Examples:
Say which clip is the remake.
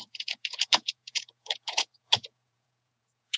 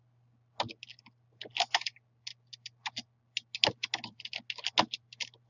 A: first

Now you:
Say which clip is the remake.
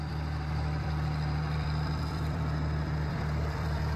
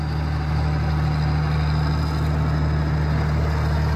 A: first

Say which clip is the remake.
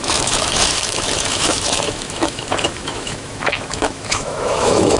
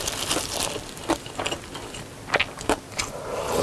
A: first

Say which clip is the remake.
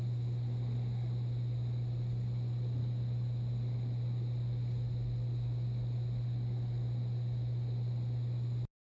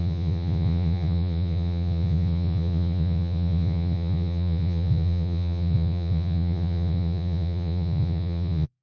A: second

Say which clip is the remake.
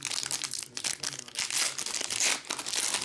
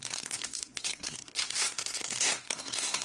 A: second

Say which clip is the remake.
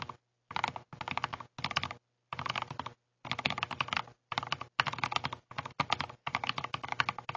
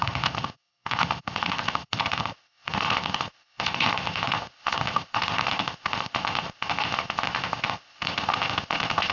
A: second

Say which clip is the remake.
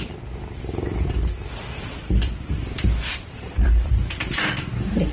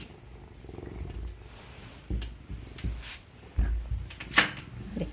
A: first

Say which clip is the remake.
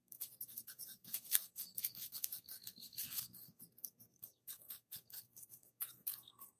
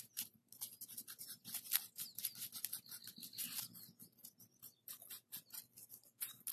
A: first